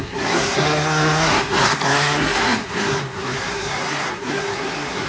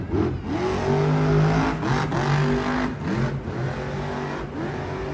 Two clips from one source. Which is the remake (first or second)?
first